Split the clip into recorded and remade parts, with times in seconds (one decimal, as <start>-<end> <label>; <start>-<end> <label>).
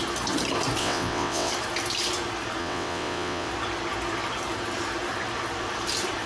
0.0-0.8 recorded; 0.8-1.5 remade; 1.5-2.6 recorded; 2.6-3.5 remade; 3.5-6.3 recorded